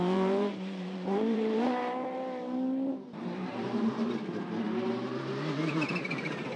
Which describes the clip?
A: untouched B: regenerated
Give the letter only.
B